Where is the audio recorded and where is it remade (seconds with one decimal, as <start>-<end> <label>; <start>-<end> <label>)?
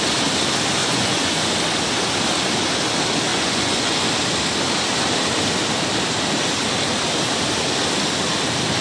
0.0-0.8 recorded; 0.8-1.5 remade; 1.5-3.3 recorded; 3.3-4.1 remade; 4.1-8.8 recorded